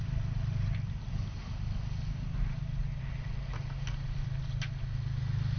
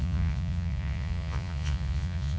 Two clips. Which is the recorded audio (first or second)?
first